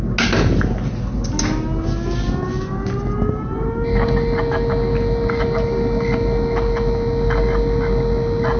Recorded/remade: recorded